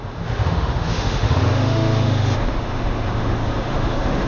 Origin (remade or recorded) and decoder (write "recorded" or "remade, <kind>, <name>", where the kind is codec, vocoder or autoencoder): remade, autoencoder, DAC-VAE